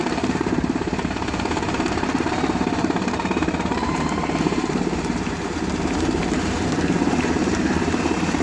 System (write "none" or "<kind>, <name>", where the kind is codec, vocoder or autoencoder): vocoder, BigVGAN v2